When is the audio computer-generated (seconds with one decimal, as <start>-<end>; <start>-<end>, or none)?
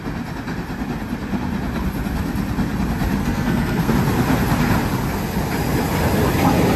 3.2-3.9